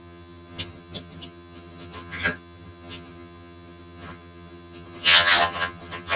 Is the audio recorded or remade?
remade